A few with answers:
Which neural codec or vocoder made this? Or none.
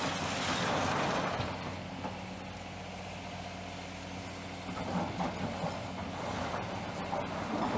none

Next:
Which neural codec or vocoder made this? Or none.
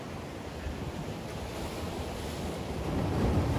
none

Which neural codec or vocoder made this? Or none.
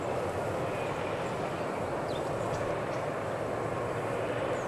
vocoder, BigVGAN v2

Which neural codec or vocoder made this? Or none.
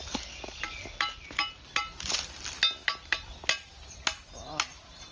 none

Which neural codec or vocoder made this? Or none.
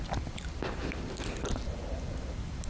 none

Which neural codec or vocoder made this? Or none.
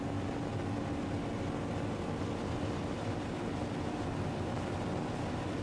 none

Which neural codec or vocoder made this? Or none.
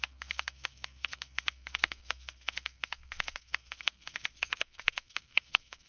codec, SNAC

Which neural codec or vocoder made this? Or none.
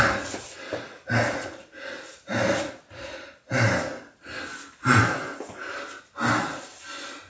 none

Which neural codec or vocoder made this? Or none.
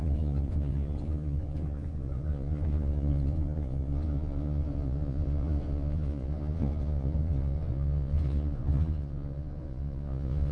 vocoder, Vocos